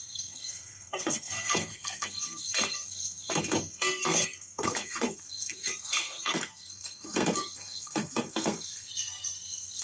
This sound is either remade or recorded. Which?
remade